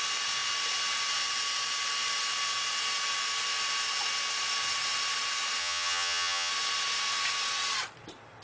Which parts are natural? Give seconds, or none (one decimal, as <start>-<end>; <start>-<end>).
0.0-5.6; 6.5-8.4